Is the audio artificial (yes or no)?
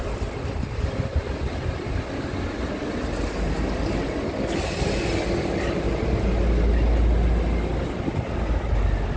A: no